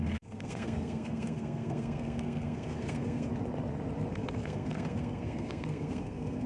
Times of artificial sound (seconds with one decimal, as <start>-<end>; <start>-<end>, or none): 0.0-3.3; 4.1-6.5

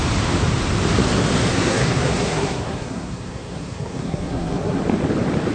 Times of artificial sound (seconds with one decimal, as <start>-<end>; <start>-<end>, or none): 1.5-4.8

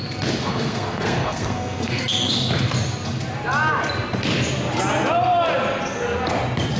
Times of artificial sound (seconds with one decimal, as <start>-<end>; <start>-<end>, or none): 0.4-2.5

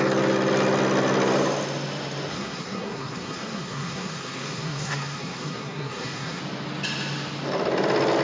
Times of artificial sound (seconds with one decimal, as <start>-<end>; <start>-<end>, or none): 2.3-6.4